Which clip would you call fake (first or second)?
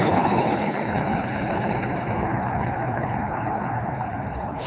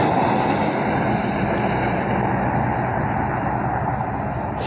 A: first